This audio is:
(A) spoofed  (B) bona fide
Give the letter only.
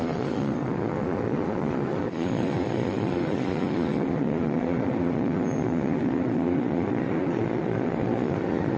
A